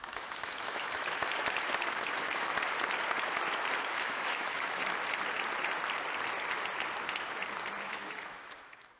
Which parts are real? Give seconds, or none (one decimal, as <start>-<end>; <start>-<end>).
1.2-1.9; 2.5-3.8; 4.8-7.9